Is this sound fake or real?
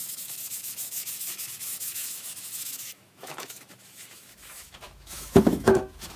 fake